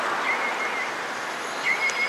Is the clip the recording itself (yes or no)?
yes